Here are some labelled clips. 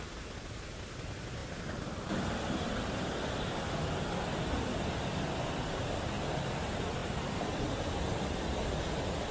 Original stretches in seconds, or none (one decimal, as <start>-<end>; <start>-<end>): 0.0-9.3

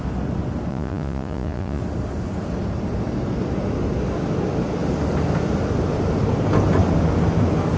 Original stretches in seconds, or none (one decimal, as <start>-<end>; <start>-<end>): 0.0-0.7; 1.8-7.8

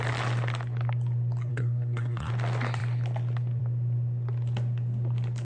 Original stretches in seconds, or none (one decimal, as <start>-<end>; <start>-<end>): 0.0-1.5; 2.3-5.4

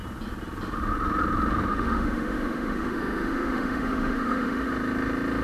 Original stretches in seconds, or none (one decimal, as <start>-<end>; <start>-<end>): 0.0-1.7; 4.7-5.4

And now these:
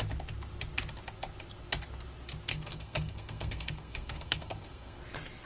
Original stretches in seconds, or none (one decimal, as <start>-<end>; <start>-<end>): 0.0-2.5; 5.0-5.5